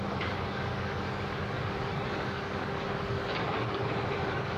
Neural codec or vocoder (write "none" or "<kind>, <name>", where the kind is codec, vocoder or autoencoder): codec, DAC